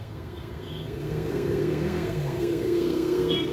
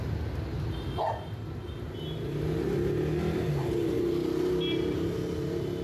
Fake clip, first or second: first